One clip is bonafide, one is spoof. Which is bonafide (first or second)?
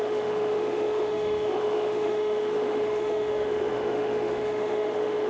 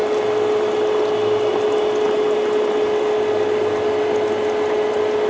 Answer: second